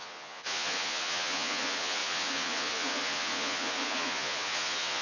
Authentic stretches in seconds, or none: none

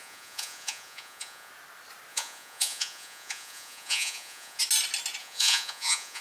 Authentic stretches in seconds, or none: 1.5-2.1; 4.6-5.2